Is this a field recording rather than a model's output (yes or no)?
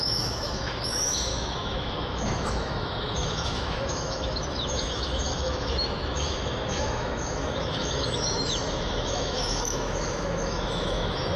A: no